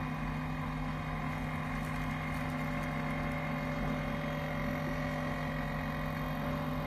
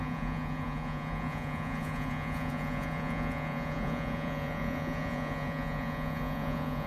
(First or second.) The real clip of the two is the first